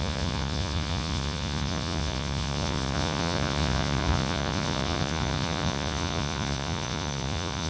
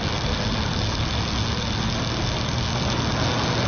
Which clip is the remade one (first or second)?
first